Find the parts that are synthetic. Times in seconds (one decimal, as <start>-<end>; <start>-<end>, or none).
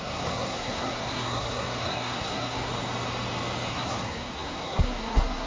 0.0-2.7; 3.7-5.5